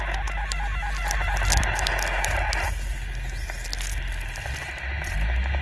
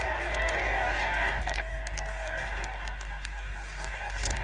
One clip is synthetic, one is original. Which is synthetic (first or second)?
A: second